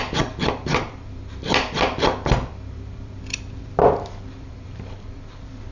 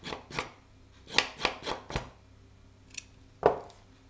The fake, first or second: first